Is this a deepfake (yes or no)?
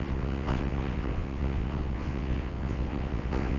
yes